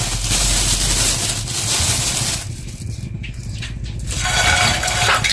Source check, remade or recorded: recorded